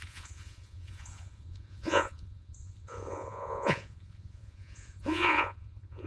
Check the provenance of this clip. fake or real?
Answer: fake